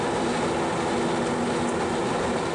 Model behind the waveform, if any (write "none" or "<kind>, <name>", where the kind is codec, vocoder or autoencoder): none